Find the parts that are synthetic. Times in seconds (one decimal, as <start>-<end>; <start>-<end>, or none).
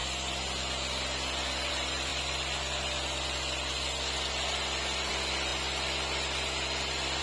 none